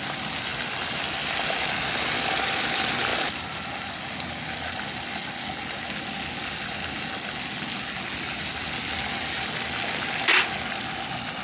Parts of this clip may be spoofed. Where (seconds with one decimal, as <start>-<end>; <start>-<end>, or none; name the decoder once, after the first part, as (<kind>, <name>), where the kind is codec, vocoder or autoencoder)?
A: none